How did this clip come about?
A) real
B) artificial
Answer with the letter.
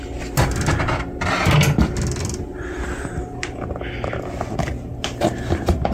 A